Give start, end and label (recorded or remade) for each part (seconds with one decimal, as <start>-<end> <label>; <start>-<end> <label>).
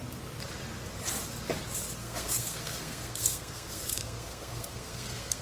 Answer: 0.0-2.0 recorded; 2.0-5.4 remade